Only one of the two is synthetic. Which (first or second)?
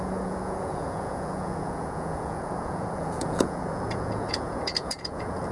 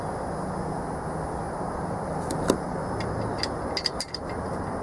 first